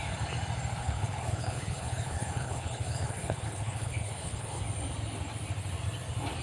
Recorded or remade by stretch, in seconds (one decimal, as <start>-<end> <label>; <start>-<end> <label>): 0.0-0.8 recorded; 0.8-4.6 remade; 4.6-6.4 recorded

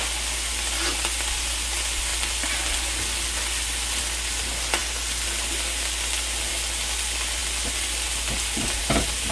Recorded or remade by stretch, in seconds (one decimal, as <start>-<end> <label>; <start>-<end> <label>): 0.0-9.3 recorded

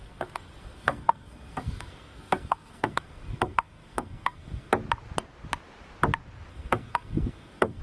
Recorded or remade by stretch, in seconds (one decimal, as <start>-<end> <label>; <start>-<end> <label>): 0.0-4.7 remade; 4.7-6.5 recorded; 6.5-7.8 remade

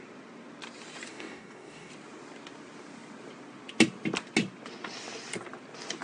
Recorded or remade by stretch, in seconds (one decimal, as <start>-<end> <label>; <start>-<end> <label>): 0.0-1.1 recorded; 1.1-1.9 remade; 1.9-6.0 recorded

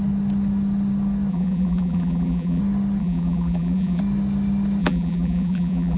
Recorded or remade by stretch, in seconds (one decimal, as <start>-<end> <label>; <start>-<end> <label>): 0.0-1.3 recorded; 1.3-2.6 remade; 2.6-3.0 recorded; 3.0-4.0 remade; 4.0-4.8 recorded; 4.8-6.0 remade

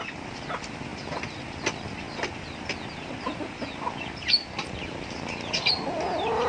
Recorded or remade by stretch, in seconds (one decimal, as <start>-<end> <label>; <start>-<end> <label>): 0.0-6.5 recorded